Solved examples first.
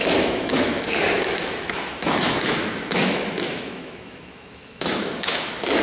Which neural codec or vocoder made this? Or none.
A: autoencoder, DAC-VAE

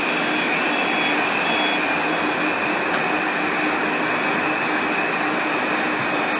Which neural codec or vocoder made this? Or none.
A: none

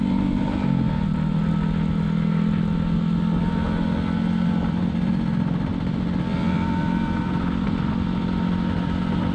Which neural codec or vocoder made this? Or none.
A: none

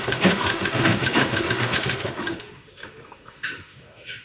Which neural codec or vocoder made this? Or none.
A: autoencoder, DAC-VAE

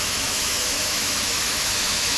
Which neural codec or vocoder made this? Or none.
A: autoencoder, DAC-VAE